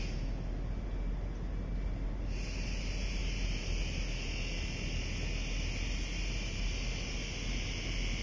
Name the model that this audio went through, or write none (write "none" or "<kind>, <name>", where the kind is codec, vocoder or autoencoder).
none